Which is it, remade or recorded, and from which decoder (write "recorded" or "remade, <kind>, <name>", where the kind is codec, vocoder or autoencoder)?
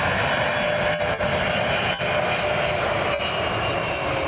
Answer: recorded